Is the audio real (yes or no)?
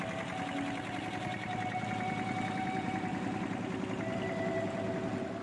yes